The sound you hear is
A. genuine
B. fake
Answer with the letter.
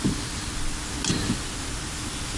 A